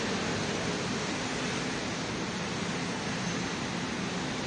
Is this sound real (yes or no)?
yes